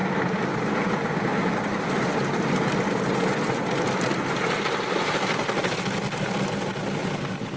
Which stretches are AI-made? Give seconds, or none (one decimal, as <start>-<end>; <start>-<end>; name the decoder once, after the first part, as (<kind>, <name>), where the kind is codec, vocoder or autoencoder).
none